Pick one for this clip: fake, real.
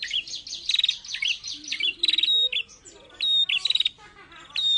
real